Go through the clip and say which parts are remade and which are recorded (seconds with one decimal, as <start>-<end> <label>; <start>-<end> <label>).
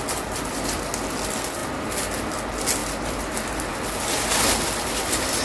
0.0-5.4 recorded